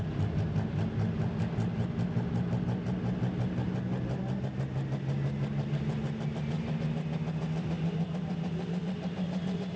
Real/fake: real